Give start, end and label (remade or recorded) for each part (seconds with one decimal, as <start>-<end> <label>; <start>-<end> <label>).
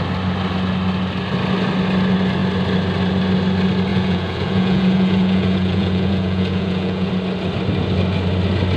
0.0-3.9 recorded; 3.9-7.1 remade; 7.1-8.8 recorded